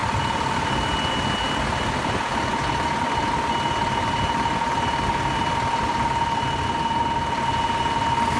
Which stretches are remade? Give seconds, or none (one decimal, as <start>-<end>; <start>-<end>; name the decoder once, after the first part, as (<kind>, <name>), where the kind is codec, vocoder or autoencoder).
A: 0.0-1.1 (vocoder, BigVGAN v2); 2.3-7.0